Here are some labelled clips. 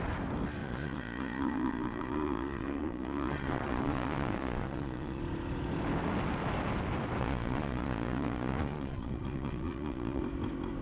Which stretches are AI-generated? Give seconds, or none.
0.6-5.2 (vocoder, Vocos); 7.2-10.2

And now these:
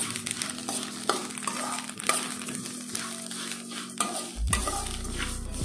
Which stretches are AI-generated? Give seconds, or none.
none